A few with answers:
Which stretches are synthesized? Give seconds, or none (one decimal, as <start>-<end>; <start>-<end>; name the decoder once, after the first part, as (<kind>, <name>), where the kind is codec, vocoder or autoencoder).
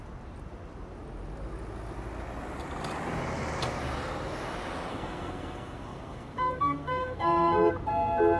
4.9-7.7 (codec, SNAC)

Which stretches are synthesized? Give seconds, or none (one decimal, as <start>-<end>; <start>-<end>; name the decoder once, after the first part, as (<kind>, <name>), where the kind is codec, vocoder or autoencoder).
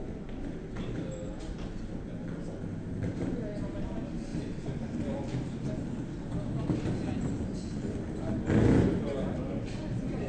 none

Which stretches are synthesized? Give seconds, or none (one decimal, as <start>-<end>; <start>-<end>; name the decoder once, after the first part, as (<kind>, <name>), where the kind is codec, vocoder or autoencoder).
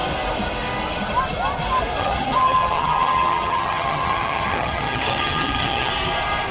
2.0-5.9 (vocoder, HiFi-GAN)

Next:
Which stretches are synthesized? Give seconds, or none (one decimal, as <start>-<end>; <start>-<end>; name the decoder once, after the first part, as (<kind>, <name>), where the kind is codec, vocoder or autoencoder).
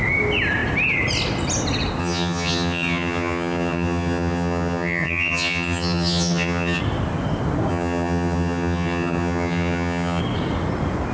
2.0-6.8 (vocoder, HiFi-GAN); 7.7-10.2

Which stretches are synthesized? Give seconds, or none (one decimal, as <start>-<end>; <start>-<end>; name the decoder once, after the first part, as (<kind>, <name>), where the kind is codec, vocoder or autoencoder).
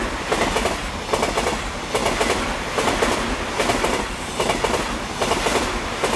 none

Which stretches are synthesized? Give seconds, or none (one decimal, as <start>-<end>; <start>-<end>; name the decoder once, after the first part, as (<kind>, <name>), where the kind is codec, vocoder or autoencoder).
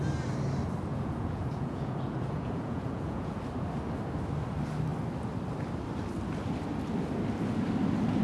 0.9-3.4 (vocoder, Vocos)